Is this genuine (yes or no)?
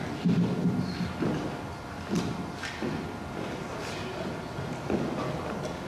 yes